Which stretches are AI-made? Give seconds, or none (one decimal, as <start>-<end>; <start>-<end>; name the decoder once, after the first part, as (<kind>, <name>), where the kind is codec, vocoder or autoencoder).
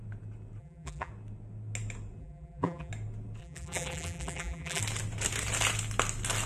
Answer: 0.6-1.1 (vocoder, BigVGAN v2); 2.2-2.9; 3.4-4.8